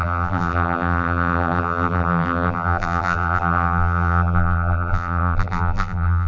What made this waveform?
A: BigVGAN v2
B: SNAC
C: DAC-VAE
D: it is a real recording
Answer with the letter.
A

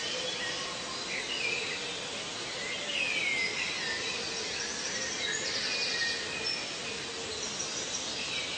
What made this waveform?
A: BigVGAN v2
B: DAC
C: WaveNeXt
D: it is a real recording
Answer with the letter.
D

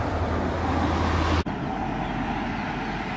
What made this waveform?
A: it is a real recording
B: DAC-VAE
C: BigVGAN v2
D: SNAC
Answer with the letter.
A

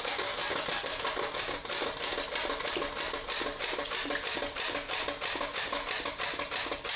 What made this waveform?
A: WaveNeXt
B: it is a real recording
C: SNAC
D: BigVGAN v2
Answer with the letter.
B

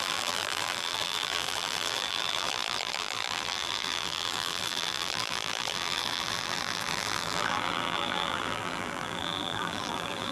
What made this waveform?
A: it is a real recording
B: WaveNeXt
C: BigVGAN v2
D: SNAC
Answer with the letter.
C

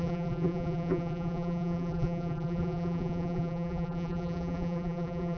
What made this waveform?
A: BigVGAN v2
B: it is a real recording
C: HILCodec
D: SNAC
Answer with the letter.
A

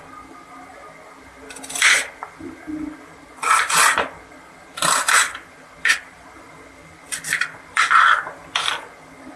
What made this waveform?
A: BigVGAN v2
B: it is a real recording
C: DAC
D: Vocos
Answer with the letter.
A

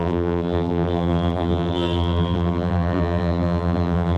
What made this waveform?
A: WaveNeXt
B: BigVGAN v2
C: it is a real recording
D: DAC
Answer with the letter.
B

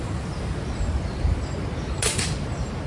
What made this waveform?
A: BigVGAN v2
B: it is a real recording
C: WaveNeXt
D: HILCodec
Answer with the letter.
B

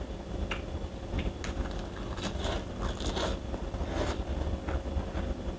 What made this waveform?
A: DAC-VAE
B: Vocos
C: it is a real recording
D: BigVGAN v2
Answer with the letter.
C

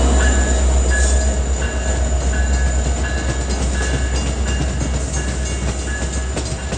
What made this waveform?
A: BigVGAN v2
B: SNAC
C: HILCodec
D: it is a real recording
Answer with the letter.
D